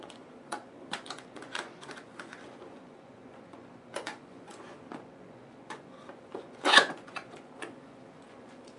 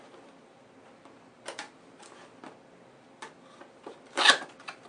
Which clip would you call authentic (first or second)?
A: second